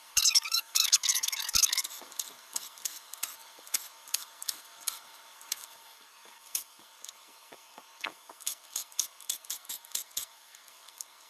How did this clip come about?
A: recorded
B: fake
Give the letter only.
B